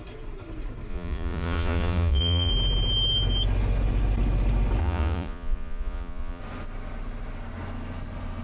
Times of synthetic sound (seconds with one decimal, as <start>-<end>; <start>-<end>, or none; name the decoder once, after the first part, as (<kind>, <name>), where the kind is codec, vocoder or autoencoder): 0.9-2.5 (vocoder, Vocos); 4.8-6.4